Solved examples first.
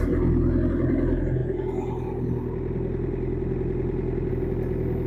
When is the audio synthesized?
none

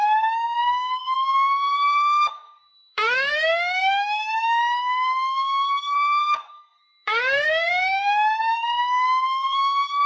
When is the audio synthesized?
0.0-10.1

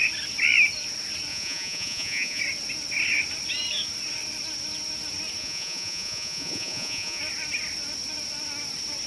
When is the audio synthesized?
1.3-2.4; 5.4-7.2

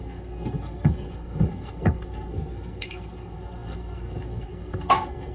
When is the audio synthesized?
0.0-5.3

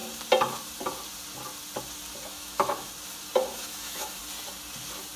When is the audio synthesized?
2.3-2.9; 3.5-4.2

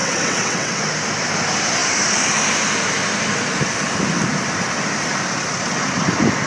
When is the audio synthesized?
0.0-0.8

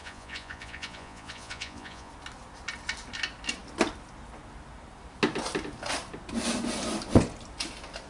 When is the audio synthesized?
0.0-2.1